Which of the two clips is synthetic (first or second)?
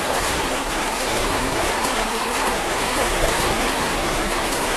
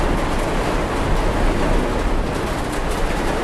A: first